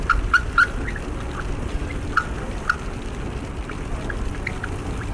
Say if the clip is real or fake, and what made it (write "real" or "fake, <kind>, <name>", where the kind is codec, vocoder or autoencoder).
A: real